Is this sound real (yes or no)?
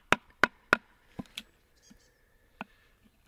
yes